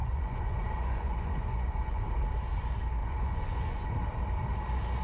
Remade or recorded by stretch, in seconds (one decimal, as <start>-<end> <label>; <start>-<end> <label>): 0.0-2.1 remade; 2.1-3.0 recorded; 3.0-3.9 remade; 3.9-5.0 recorded